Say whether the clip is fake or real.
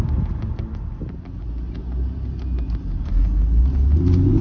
real